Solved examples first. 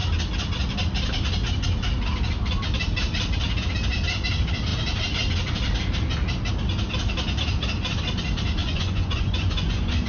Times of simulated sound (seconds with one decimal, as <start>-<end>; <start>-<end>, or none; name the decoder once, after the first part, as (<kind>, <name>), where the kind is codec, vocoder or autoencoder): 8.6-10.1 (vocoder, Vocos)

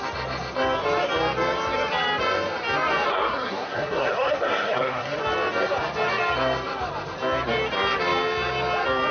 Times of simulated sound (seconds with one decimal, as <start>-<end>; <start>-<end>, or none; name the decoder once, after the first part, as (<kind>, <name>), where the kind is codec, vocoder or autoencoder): 3.1-5.2 (codec, SNAC)

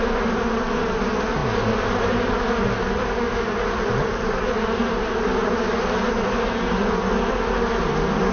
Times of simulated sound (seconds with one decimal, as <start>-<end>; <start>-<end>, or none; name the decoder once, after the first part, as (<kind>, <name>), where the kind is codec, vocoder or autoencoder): none